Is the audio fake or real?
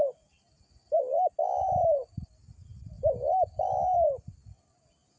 real